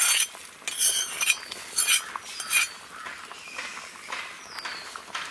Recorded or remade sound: recorded